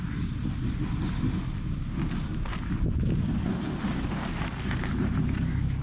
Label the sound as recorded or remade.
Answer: recorded